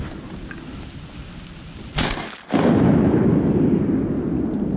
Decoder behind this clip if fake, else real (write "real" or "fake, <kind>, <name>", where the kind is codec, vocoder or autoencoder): real